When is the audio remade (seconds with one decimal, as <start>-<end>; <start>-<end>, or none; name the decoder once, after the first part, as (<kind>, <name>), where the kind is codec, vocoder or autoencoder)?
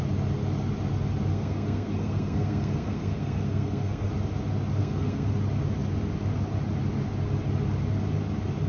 1.3-4.1 (codec, SNAC); 4.8-5.3